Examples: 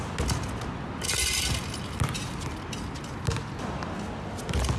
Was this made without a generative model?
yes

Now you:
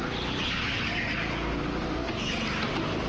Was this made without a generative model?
yes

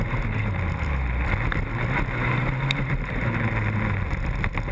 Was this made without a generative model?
yes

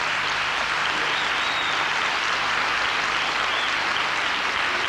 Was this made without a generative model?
yes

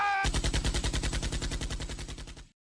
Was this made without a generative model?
yes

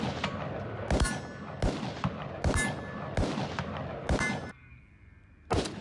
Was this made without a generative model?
yes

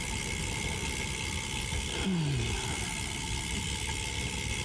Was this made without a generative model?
yes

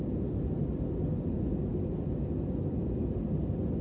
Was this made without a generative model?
yes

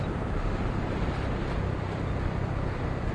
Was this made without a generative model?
yes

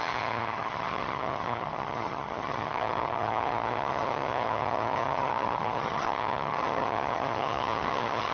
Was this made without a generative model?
no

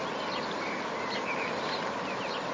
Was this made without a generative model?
yes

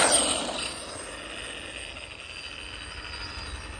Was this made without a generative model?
yes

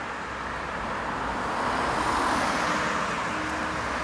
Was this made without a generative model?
yes